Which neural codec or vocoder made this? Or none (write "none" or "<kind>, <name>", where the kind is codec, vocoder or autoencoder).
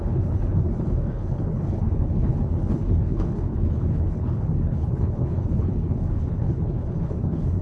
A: codec, HILCodec